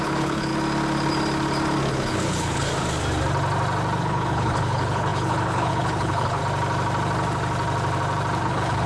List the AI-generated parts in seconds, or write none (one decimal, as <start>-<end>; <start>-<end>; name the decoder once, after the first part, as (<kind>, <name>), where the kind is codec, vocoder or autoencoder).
0.0-0.5 (codec, HILCodec); 1.9-2.7; 4.0-6.4; 8.4-8.9